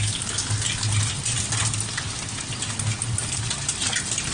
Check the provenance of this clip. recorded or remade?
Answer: recorded